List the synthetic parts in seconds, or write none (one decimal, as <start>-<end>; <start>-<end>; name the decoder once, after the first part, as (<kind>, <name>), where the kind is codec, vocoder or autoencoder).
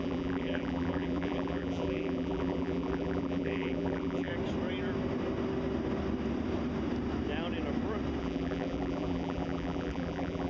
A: 0.0-4.3 (vocoder, BigVGAN v2); 8.2-10.5